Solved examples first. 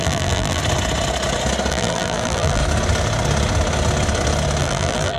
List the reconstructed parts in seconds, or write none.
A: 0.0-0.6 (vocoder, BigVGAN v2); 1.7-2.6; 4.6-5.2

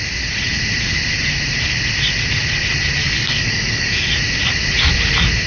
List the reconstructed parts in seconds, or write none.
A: 3.0-4.1 (codec, DAC)